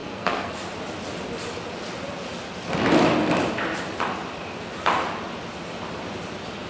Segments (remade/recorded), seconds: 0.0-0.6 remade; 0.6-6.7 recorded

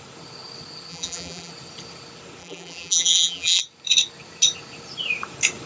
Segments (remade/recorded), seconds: 0.0-0.9 recorded; 0.9-1.5 remade; 1.5-2.4 recorded; 2.4-3.6 remade; 3.6-5.7 recorded

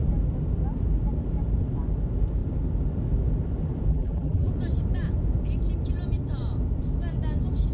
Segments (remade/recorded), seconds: 0.0-3.9 recorded; 3.9-4.5 remade; 4.5-7.7 recorded

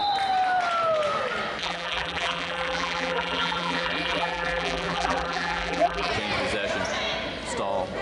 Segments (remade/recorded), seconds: 0.0-1.6 recorded; 1.6-6.1 remade; 6.1-8.0 recorded

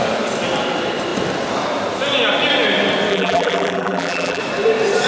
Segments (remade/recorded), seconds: 0.0-3.1 recorded; 3.1-4.4 remade; 4.4-5.1 recorded